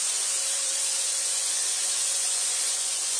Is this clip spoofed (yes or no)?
yes